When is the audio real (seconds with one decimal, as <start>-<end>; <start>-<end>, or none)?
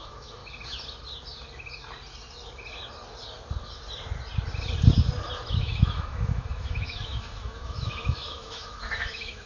0.4-5.6